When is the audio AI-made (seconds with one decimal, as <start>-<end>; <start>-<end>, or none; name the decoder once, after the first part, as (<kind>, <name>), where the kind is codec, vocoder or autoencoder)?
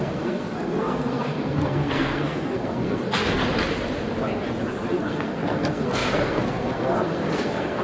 0.0-3.4 (codec, SNAC); 4.9-7.8